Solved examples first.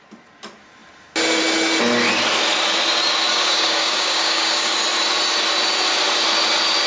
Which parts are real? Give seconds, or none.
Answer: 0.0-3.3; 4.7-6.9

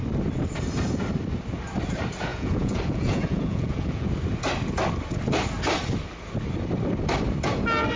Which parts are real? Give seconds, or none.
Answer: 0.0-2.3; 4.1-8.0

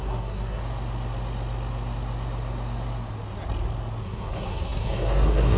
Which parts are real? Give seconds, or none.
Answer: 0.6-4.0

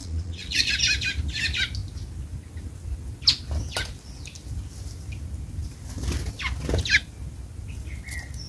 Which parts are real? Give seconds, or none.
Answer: 0.7-8.5

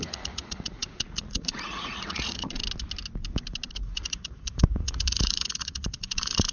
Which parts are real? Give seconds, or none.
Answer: 2.6-3.7